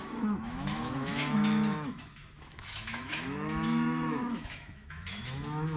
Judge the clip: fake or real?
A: fake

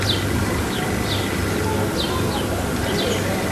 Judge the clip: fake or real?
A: real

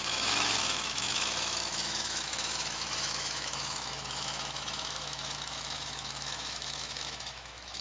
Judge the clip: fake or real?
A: fake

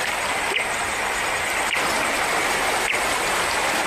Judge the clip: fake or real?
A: real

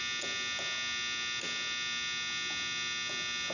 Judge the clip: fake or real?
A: real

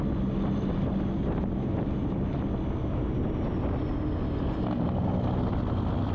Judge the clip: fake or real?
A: real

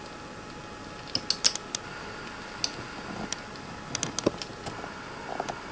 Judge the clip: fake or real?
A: real